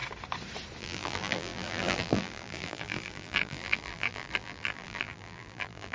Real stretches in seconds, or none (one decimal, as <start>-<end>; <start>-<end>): 0.0-0.8